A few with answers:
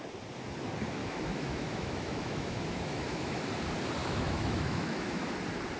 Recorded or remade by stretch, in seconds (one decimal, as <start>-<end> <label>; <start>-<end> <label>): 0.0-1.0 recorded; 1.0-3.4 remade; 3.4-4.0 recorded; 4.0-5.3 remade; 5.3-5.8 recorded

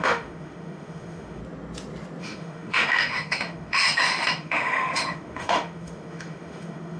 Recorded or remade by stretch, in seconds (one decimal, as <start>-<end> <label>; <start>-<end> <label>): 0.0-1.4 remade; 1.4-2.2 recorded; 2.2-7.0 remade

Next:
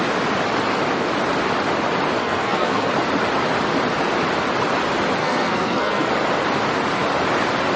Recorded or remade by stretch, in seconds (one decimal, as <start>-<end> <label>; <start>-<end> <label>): 0.0-2.2 recorded; 2.2-2.9 remade; 2.9-5.2 recorded; 5.2-6.1 remade; 6.1-7.8 recorded

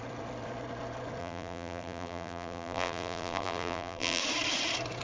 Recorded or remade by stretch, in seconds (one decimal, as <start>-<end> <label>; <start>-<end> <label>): 0.0-1.2 recorded; 1.2-4.2 remade; 4.2-5.0 recorded

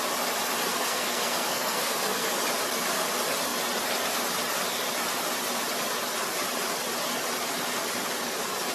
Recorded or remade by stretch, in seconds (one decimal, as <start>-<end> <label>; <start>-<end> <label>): 0.0-0.7 recorded; 0.7-2.3 remade; 2.3-8.7 recorded

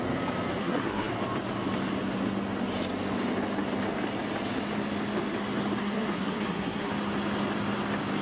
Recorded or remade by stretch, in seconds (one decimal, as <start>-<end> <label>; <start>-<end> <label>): 0.0-0.6 recorded; 0.6-1.1 remade; 1.1-5.8 recorded; 5.8-6.9 remade; 6.9-8.2 recorded